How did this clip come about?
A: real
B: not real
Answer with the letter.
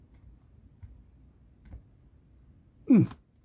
A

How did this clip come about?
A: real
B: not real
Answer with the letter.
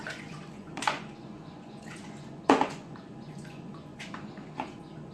B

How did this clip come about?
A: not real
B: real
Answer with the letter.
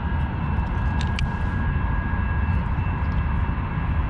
B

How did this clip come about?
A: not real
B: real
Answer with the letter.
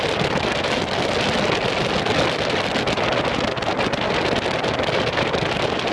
B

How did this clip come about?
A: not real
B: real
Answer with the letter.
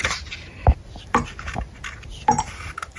B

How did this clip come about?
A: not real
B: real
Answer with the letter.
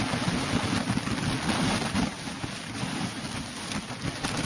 B